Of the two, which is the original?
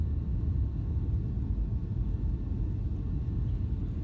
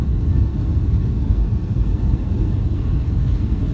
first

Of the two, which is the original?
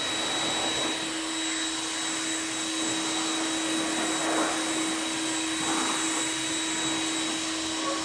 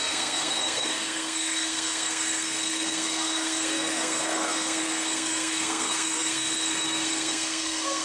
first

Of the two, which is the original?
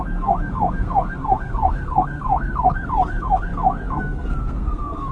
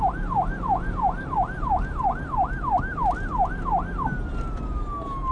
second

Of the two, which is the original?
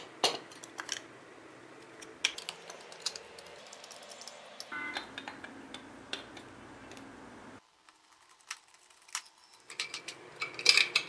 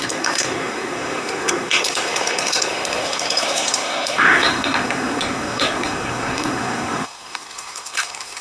first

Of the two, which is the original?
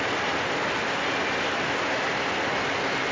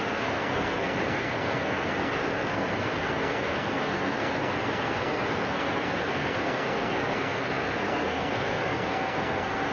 first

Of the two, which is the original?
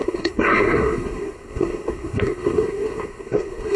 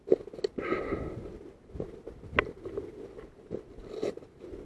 second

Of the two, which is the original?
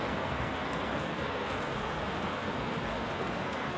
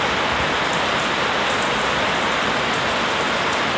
second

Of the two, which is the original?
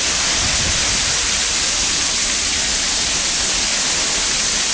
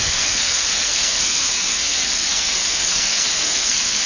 first